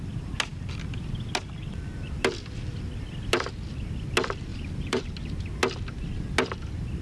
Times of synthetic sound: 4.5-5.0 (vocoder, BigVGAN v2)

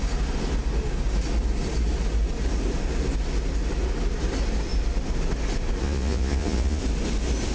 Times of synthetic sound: 5.8-6.8 (vocoder, Vocos)